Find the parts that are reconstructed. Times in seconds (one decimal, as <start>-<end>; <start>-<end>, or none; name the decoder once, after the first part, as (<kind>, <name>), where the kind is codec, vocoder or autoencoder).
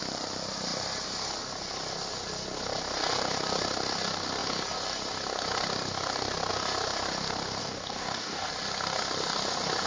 7.6-8.5 (codec, DAC)